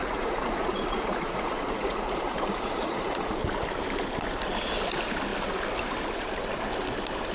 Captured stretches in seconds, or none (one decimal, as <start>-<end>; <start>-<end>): 3.4-7.3